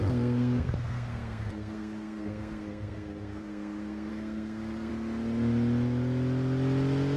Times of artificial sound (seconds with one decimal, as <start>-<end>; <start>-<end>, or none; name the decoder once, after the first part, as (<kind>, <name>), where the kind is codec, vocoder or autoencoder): 0.0-4.9 (codec, SNAC)